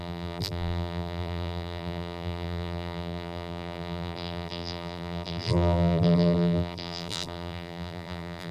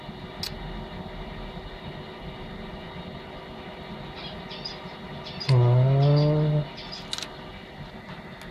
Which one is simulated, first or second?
first